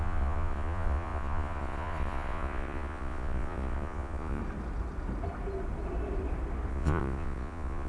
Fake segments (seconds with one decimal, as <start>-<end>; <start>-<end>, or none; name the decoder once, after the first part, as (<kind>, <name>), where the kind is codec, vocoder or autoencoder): 0.0-4.4 (vocoder, Vocos); 6.7-7.9